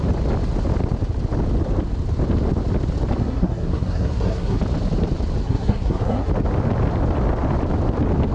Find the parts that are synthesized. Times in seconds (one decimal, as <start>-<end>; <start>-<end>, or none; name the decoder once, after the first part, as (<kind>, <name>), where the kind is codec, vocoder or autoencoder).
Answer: 3.2-4.6 (codec, SNAC); 5.4-6.3